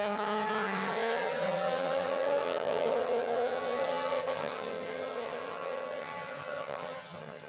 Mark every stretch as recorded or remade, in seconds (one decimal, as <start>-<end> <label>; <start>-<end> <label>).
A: 0.0-7.5 remade